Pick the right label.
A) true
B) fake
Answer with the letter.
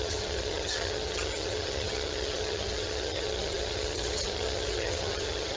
B